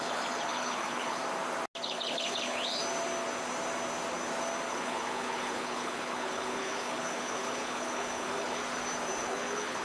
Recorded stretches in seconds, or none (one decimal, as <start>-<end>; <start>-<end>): 1.2-1.8; 2.8-4.7; 8.6-9.2